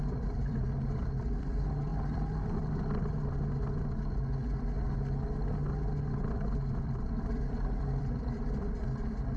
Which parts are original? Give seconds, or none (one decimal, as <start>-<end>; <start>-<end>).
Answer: 1.9-6.5